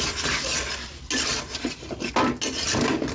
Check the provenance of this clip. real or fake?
real